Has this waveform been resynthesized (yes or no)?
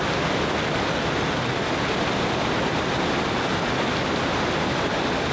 no